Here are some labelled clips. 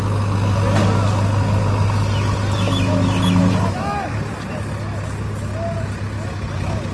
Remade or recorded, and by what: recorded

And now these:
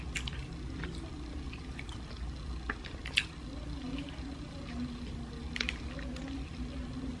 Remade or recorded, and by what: recorded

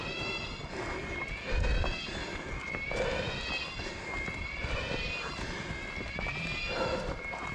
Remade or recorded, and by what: recorded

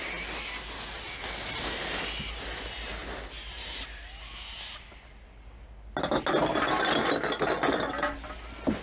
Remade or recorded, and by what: recorded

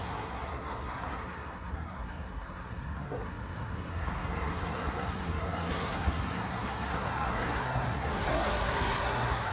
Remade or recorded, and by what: remade, codec, SNAC